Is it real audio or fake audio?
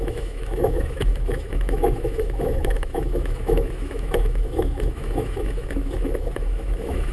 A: fake